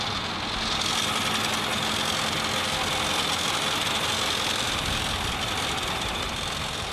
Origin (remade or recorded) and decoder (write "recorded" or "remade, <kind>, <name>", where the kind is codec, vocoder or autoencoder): recorded